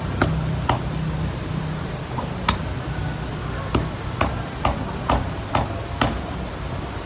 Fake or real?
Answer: real